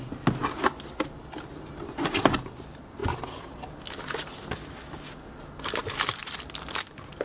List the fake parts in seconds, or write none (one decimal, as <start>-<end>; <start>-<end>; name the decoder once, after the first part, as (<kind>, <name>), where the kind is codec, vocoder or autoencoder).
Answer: none